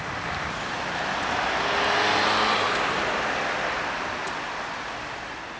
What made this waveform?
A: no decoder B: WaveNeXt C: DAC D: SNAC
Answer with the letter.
A